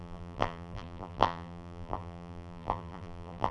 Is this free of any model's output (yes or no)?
no